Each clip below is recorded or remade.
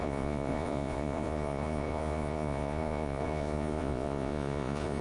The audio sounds remade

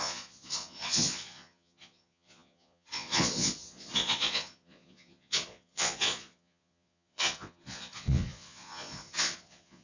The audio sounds remade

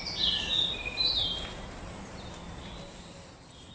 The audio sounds recorded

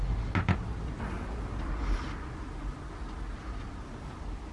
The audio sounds recorded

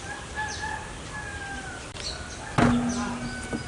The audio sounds recorded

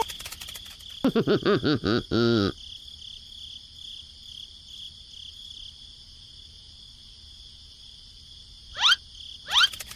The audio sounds recorded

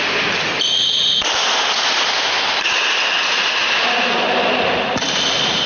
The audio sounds recorded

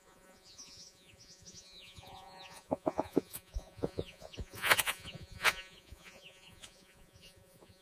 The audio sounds remade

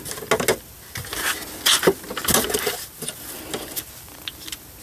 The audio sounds recorded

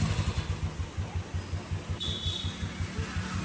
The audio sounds recorded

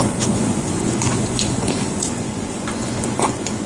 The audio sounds remade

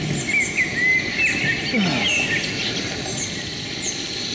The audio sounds recorded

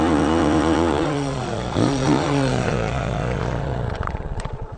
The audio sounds remade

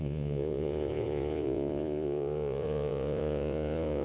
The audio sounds remade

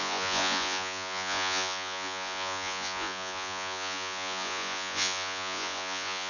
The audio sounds remade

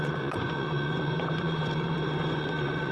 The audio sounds remade